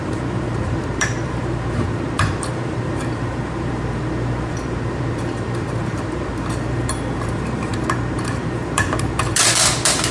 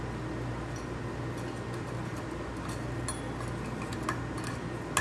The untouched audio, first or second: second